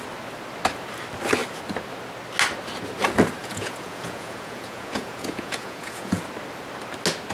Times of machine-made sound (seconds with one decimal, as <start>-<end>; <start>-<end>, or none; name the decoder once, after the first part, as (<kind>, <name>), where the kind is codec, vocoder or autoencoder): 3.4-6.2 (vocoder, Vocos)